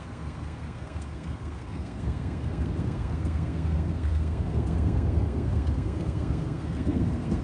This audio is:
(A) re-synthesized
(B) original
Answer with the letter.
A